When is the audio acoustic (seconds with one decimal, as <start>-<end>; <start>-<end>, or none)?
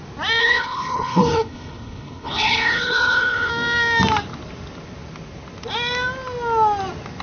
0.0-0.4; 3.5-7.2